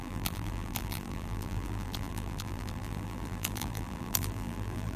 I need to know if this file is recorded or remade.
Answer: remade